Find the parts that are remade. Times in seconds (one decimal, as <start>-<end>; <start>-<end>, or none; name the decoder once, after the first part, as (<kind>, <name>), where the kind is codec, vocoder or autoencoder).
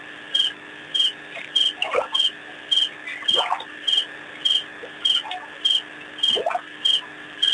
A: none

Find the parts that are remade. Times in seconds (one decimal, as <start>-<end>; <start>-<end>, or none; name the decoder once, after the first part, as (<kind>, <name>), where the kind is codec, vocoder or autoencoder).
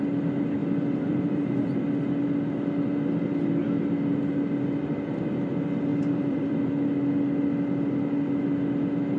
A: 0.6-1.8 (vocoder, BigVGAN v2); 5.9-6.7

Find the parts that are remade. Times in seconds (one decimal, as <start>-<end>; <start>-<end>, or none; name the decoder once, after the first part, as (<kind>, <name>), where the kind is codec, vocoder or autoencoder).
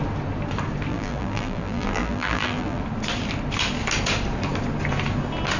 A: 0.9-2.8 (vocoder, BigVGAN v2)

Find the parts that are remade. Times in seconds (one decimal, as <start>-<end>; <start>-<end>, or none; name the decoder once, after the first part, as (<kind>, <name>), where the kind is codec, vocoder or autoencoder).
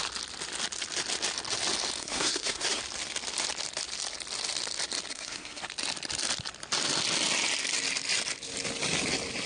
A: 2.0-2.8 (codec, SNAC); 5.1-5.6